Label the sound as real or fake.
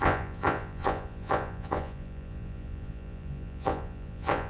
fake